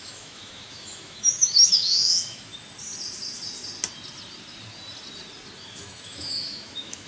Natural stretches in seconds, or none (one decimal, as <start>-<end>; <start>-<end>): 2.5-5.8